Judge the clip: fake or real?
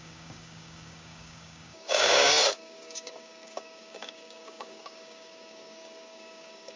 fake